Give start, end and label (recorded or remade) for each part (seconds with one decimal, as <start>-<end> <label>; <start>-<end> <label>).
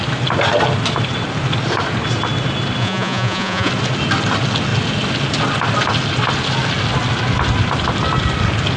0.0-2.8 recorded; 2.8-3.7 remade; 3.7-8.8 recorded